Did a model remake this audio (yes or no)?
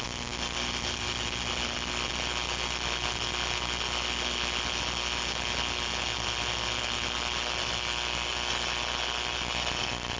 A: no